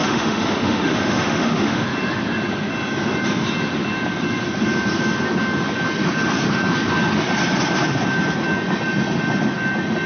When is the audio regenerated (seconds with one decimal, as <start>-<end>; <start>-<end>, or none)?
0.0-1.8